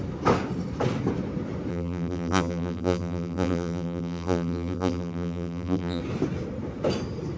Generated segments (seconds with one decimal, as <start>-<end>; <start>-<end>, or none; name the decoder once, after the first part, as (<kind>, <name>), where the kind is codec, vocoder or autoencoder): 1.7-6.0 (vocoder, BigVGAN v2)